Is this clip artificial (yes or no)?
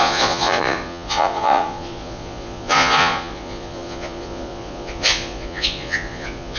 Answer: yes